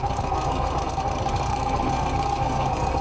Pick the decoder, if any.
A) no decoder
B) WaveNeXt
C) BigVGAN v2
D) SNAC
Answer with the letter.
D